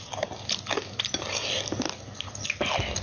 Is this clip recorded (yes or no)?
yes